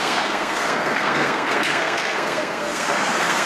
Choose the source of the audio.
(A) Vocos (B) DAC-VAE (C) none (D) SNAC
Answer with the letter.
D